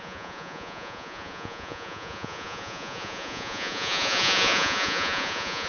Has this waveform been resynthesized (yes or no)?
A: yes